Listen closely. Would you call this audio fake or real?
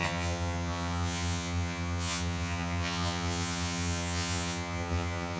fake